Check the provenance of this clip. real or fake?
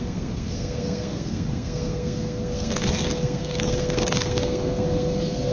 fake